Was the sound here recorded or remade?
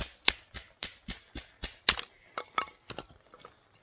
recorded